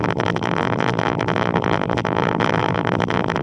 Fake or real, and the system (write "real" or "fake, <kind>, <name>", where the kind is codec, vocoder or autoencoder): fake, vocoder, BigVGAN v2